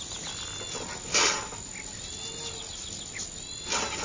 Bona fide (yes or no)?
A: yes